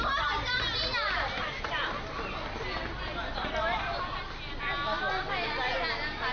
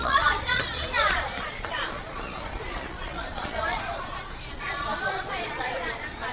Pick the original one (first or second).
first